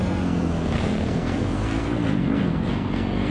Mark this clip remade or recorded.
remade